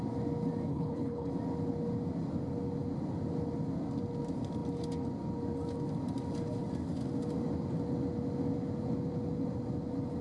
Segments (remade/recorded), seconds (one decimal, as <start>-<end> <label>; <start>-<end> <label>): 0.0-0.7 recorded; 0.7-1.3 remade; 1.3-10.2 recorded